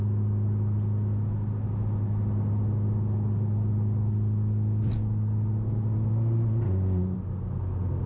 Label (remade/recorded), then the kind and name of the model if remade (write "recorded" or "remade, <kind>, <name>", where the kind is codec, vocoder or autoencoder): recorded